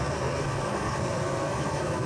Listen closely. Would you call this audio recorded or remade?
remade